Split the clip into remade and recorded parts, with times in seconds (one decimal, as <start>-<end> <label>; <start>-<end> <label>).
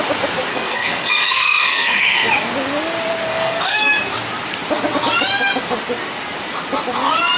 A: 0.0-0.5 recorded; 0.5-2.3 remade; 2.3-3.3 recorded; 3.3-3.9 remade; 3.9-7.4 recorded